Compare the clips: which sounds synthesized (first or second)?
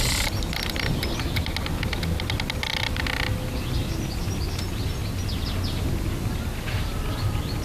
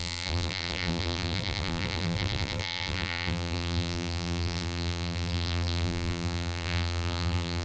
second